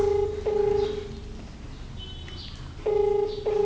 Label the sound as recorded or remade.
recorded